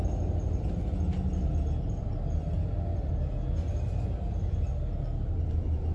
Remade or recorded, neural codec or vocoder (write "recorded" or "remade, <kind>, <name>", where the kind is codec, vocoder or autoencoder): recorded